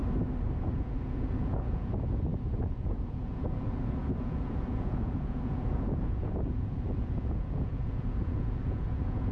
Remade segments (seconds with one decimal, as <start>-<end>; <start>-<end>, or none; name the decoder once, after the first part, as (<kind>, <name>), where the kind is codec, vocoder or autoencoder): 0.6-9.3 (vocoder, Vocos)